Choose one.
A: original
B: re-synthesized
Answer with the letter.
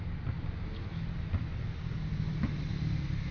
A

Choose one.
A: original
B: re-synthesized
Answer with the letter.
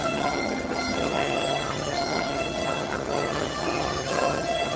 B